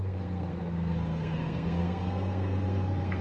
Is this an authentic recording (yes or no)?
no